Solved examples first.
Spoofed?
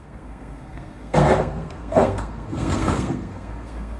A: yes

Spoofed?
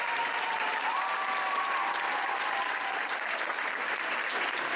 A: no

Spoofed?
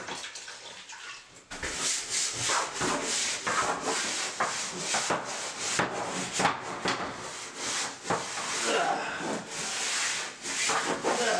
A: no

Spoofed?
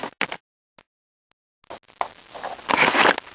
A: no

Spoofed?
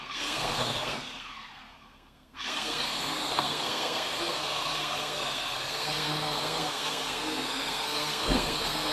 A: yes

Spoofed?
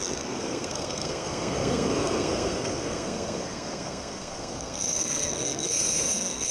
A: yes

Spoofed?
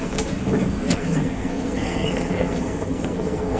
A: yes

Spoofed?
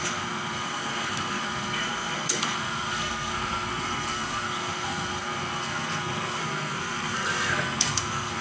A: yes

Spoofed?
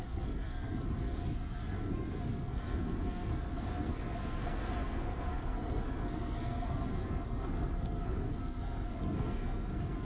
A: yes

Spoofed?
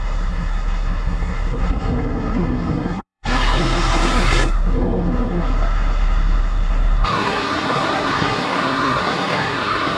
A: yes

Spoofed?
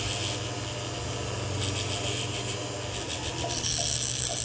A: no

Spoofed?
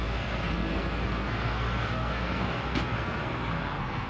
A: yes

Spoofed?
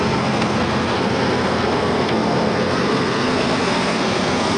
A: yes